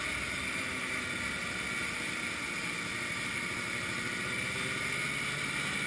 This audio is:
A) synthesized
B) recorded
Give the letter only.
B